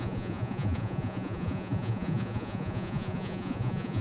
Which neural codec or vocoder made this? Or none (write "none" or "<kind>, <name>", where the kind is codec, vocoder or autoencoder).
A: vocoder, Vocos